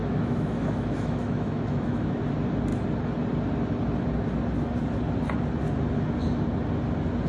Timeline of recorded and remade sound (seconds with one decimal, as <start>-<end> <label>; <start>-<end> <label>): 0.0-2.2 remade; 2.2-7.3 recorded